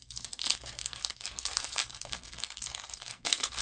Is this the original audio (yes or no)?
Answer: no